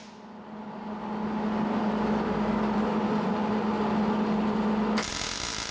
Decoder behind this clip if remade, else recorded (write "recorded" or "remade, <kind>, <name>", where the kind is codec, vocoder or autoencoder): recorded